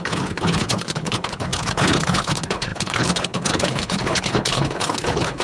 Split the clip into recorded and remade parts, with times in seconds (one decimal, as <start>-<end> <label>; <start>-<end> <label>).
0.0-5.4 remade